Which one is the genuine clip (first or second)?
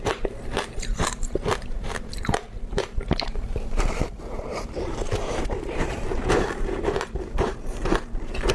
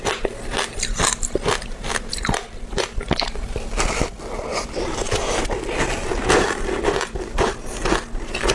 second